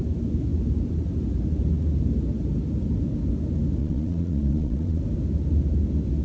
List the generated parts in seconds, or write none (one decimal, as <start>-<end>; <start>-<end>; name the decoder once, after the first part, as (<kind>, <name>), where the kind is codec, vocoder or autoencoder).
3.8-5.0 (vocoder, Vocos)